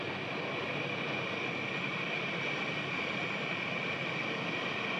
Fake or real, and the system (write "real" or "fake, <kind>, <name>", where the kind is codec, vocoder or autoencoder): real